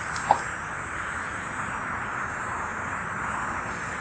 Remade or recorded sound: recorded